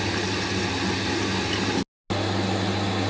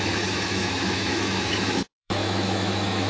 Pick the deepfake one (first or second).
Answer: second